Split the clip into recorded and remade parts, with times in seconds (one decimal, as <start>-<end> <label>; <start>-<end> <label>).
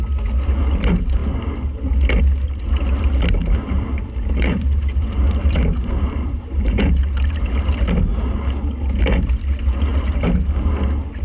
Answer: 0.0-3.4 recorded; 3.4-7.6 remade; 7.6-11.2 recorded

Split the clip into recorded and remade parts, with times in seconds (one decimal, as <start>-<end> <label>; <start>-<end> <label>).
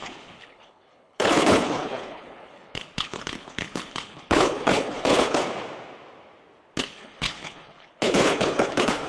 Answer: 0.0-5.4 remade; 5.4-6.8 recorded; 6.8-9.1 remade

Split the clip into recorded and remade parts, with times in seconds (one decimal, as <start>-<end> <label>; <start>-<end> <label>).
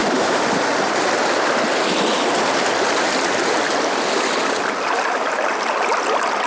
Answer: 0.0-6.5 recorded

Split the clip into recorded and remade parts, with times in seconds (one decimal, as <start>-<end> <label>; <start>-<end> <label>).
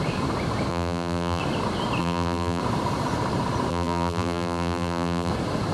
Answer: 0.0-0.7 recorded; 0.7-1.4 remade; 1.4-2.0 recorded; 2.0-2.6 remade; 2.6-3.7 recorded; 3.7-5.3 remade; 5.3-5.7 recorded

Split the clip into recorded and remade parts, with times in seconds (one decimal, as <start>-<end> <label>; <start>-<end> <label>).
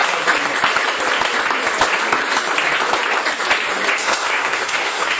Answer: 0.0-4.0 recorded; 4.0-5.2 remade